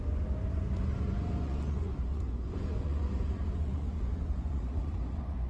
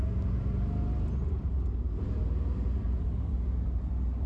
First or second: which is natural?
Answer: second